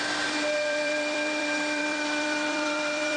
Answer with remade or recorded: remade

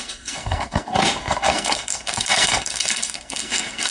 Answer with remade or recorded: remade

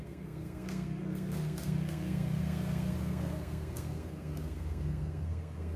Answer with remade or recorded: remade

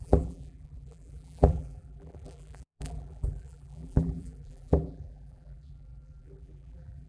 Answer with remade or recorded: remade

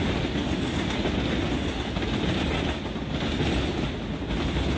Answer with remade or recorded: recorded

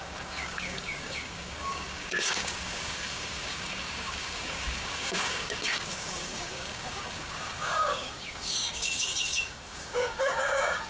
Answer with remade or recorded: remade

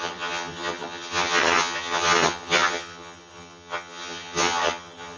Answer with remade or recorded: remade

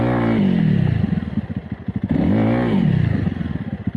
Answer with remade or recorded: recorded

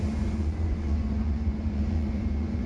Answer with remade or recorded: remade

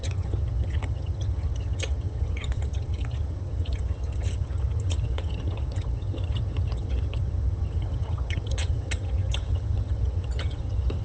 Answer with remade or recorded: remade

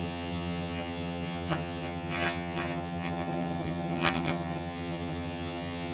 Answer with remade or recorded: remade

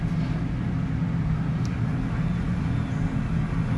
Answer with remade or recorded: recorded